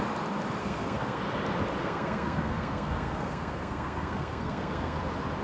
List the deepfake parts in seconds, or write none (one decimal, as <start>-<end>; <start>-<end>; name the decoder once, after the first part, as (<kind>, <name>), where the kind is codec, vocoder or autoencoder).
0.6-1.2 (codec, SNAC); 1.8-5.0